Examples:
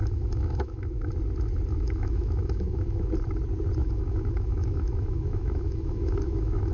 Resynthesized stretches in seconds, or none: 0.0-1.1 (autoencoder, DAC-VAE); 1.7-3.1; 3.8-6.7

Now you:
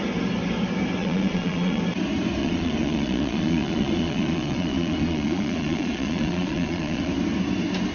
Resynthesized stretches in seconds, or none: 1.0-1.8 (vocoder, Vocos); 2.4-7.1

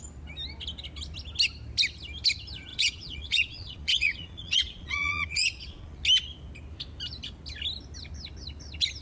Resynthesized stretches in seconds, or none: 2.7-6.0 (vocoder, Vocos)